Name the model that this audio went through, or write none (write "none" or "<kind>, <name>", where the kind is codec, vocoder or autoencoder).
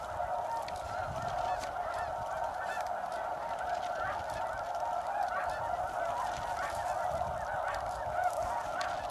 none